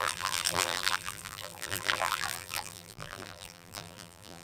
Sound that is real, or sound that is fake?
fake